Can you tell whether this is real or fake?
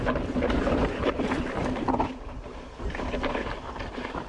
fake